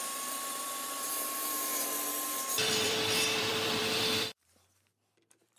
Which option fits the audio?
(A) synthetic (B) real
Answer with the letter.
A